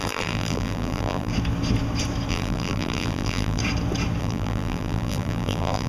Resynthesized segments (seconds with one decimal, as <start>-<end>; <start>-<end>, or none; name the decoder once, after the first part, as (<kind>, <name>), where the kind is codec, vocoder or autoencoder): 0.0-1.3 (vocoder, BigVGAN v2); 2.3-3.6; 4.2-5.9